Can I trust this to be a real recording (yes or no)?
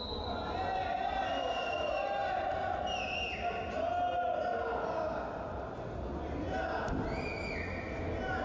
yes